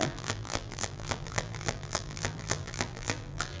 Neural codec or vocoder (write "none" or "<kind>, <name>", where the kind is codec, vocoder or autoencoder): vocoder, BigVGAN v2